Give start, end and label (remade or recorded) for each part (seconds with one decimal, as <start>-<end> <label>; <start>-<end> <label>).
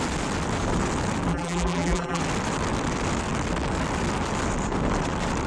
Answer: 0.0-1.3 recorded; 1.3-2.2 remade; 2.2-5.5 recorded